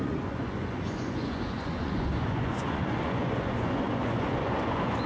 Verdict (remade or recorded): remade